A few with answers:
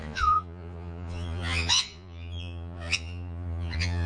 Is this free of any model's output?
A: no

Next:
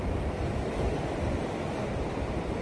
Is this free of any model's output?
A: yes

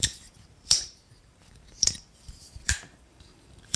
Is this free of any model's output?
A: no